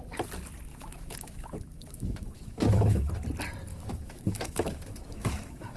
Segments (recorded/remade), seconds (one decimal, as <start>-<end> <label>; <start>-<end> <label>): 0.0-0.7 recorded; 0.7-3.1 remade; 3.1-3.7 recorded; 3.7-5.8 remade